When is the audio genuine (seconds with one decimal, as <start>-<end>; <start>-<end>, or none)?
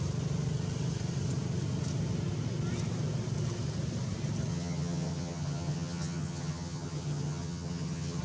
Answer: 0.0-4.5